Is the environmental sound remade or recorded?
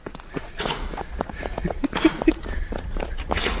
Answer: remade